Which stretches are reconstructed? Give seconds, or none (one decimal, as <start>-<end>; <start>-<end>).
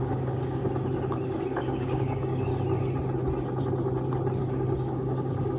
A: 0.0-0.6; 1.6-2.5; 4.4-5.6